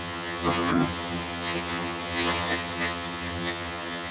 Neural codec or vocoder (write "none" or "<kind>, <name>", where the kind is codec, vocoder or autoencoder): vocoder, HiFi-GAN